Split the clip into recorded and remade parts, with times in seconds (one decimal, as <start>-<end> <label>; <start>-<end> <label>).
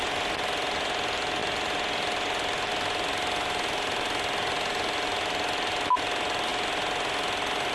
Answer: 0.0-7.7 recorded